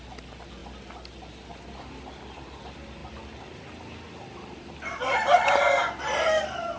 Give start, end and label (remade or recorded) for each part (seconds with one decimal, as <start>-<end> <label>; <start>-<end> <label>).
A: 0.0-6.8 recorded